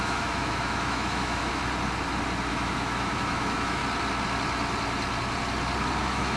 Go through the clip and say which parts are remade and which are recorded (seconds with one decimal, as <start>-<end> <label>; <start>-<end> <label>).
0.0-1.6 remade; 1.6-2.5 recorded; 2.5-3.8 remade; 3.8-6.0 recorded; 6.0-6.4 remade